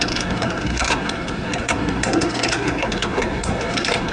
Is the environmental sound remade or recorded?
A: remade